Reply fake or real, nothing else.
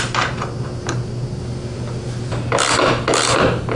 real